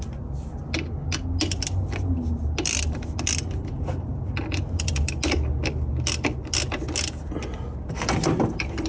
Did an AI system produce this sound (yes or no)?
no